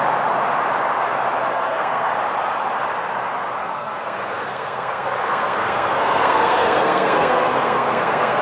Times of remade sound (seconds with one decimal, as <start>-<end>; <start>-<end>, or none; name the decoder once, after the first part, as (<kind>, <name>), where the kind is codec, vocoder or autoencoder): 1.5-2.1 (codec, SNAC); 3.6-8.4